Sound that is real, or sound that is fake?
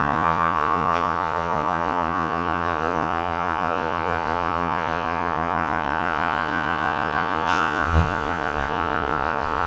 fake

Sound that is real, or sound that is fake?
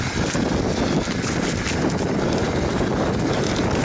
real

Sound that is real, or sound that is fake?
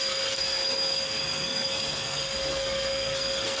fake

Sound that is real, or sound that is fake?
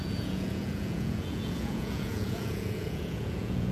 fake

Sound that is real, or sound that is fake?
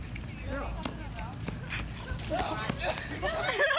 fake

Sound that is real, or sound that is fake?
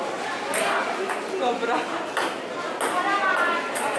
real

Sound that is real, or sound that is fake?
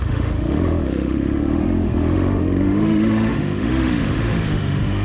fake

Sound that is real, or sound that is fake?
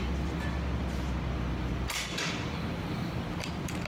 real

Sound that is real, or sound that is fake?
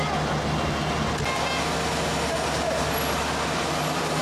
real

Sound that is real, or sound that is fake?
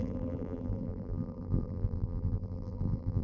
fake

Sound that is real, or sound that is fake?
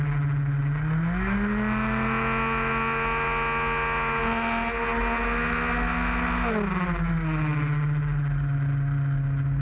real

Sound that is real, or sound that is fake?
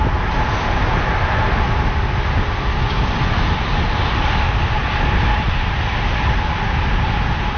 real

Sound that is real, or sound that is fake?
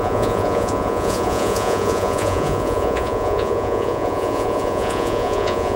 fake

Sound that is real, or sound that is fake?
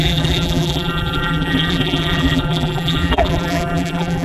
fake